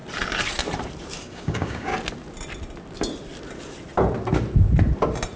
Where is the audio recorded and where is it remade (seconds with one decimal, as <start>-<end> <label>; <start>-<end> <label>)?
0.0-1.2 recorded; 1.2-1.9 remade; 1.9-5.4 recorded